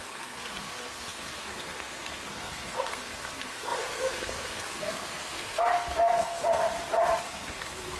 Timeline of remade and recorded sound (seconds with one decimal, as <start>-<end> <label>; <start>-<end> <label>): 0.0-6.6 remade; 6.6-7.2 recorded; 7.2-8.0 remade